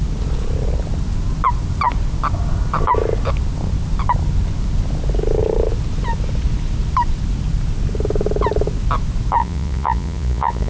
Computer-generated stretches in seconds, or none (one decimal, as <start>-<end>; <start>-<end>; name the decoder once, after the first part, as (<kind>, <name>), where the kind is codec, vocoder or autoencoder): 9.4-10.7 (vocoder, Vocos)